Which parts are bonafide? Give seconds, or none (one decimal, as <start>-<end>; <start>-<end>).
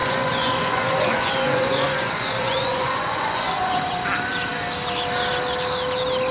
3.8-6.3